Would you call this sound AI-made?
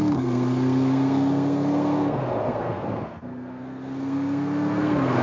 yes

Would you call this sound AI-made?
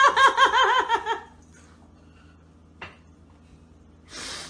no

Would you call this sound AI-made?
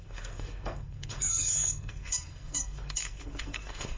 yes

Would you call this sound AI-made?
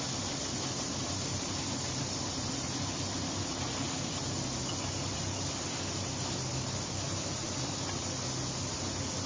no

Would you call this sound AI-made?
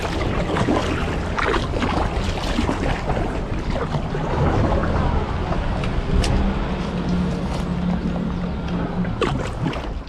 no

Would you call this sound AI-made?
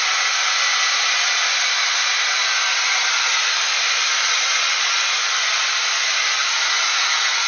no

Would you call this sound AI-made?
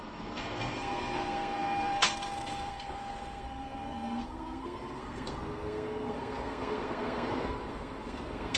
yes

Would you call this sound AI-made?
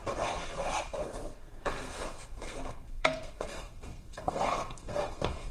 yes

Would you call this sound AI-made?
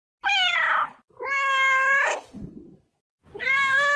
no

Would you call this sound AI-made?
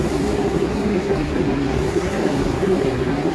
yes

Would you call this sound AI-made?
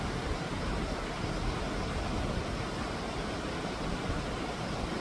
no